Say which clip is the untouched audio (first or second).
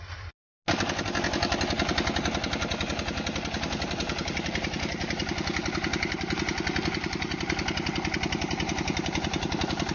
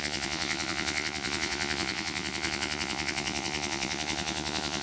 first